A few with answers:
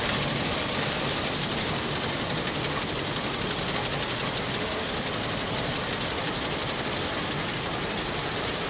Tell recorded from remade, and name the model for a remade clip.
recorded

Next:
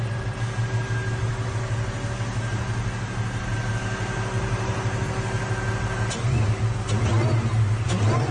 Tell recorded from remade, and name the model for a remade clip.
recorded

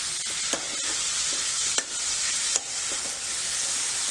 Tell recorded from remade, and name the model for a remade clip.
recorded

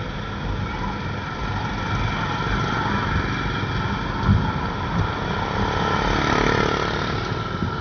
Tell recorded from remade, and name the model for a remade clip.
recorded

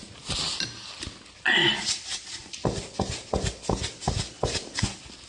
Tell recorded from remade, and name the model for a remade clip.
recorded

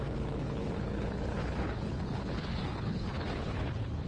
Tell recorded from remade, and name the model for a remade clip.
remade, codec, HILCodec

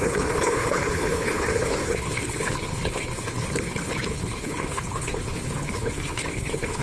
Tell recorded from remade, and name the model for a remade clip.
remade, codec, HILCodec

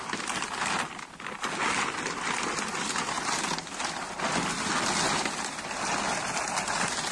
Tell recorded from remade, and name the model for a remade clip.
recorded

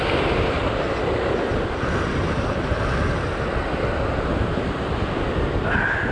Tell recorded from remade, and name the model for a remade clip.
recorded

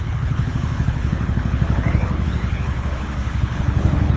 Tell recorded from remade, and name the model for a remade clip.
remade, codec, HILCodec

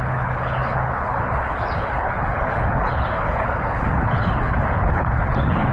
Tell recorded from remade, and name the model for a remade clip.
remade, codec, HILCodec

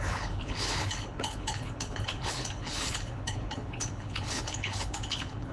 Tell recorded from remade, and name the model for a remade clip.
remade, codec, HILCodec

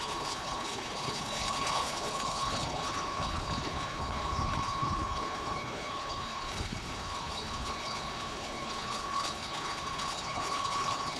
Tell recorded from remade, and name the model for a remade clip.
remade, codec, HILCodec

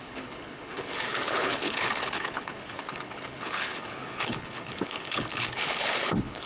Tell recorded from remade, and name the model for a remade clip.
remade, codec, HILCodec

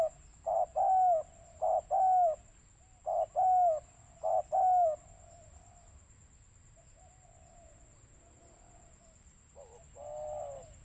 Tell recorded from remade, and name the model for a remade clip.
recorded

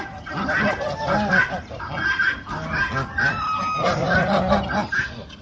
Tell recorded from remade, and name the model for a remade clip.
recorded